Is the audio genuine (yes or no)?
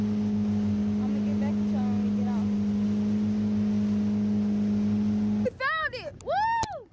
yes